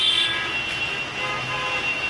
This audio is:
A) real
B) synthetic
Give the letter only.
A